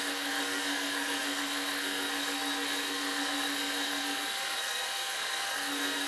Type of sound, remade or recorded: remade